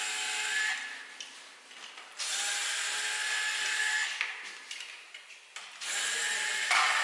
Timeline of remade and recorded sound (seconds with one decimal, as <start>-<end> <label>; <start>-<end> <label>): 0.0-7.0 recorded